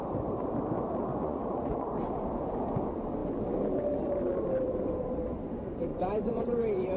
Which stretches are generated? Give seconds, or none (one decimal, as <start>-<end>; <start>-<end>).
1.1-1.9; 5.9-6.4